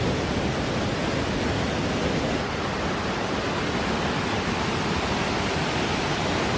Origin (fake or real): real